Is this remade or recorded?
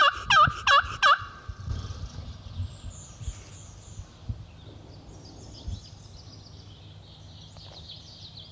recorded